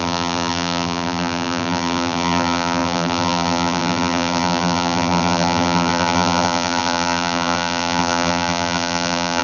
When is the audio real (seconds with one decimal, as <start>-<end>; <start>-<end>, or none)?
none